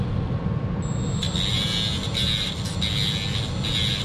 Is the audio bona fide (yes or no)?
yes